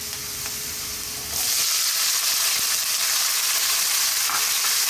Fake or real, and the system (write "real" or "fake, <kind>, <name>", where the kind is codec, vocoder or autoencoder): fake, vocoder, BigVGAN v2